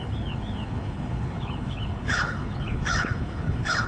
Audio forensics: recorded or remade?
remade